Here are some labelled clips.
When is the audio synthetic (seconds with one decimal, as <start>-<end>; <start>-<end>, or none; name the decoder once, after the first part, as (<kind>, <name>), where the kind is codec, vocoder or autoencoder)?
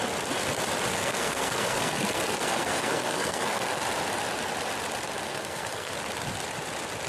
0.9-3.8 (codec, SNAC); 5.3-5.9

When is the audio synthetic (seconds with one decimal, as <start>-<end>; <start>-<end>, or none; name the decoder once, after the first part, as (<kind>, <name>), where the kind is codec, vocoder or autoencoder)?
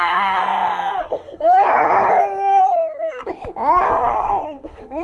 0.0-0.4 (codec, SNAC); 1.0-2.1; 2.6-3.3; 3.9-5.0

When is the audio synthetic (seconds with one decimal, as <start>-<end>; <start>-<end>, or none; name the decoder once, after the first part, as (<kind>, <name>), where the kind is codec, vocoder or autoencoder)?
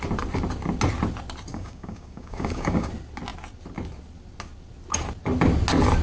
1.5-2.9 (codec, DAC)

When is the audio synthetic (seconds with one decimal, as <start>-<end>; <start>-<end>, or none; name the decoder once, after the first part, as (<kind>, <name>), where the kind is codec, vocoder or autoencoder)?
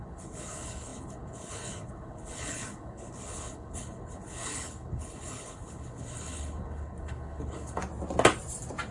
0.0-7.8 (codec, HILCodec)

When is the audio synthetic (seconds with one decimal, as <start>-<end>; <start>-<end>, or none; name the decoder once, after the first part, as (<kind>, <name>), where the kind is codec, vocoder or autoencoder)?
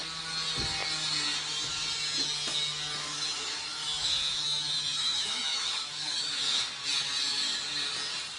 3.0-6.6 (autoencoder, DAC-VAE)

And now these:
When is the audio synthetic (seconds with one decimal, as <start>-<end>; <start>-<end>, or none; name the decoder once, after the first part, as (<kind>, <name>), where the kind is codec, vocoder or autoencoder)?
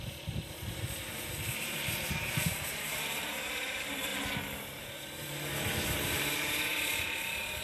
0.0-4.1 (vocoder, BigVGAN v2); 4.8-7.6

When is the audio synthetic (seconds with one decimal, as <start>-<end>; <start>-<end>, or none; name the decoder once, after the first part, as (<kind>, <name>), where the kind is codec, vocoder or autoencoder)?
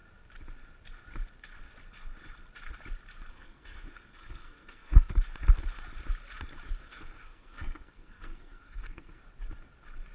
3.3-5.1 (codec, SNAC); 6.8-9.2